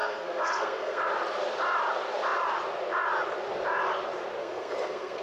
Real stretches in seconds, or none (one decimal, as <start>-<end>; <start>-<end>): 1.0-4.4